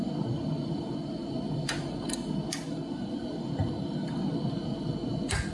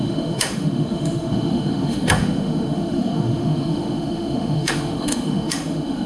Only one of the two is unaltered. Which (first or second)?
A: first